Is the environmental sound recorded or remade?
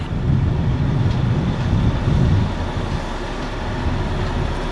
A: recorded